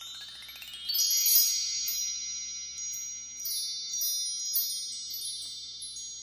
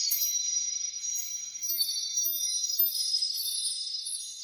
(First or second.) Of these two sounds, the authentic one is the first